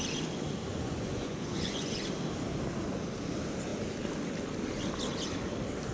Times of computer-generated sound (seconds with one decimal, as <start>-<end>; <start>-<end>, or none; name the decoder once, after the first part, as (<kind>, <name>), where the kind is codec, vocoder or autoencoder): 0.7-2.0 (vocoder, Vocos)

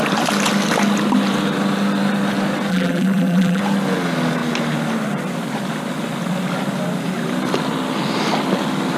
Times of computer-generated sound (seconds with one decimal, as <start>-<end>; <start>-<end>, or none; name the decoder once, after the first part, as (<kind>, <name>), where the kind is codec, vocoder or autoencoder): 2.7-3.6 (vocoder, BigVGAN v2)